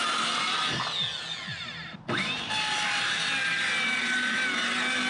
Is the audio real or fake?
real